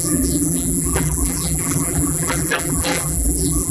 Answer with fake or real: fake